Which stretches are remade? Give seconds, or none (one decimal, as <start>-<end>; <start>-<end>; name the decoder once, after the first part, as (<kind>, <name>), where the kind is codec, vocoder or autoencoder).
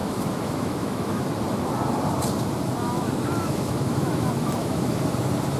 0.0-1.2 (autoencoder, DAC-VAE); 2.8-5.1